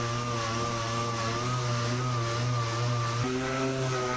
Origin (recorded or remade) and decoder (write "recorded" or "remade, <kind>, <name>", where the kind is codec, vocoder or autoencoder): recorded